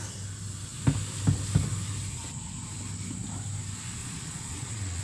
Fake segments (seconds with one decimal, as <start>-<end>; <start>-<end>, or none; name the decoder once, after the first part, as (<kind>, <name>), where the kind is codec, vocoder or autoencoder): 4.0-5.0 (vocoder, Vocos)